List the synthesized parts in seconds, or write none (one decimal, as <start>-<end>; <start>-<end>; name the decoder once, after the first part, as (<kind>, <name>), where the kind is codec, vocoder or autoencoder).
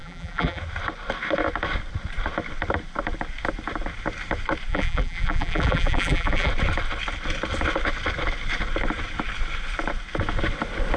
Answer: 0.0-0.6 (vocoder, BigVGAN v2); 4.7-6.5